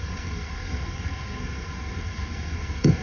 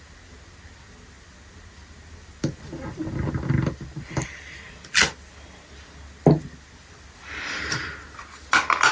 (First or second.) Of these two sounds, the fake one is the first